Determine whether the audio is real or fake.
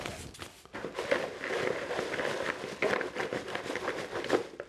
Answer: real